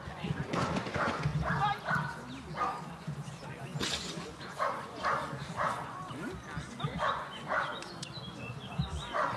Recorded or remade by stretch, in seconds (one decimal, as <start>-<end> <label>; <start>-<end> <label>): 0.0-1.3 remade; 1.3-2.9 recorded; 2.9-6.0 remade; 6.0-7.0 recorded; 7.0-9.4 remade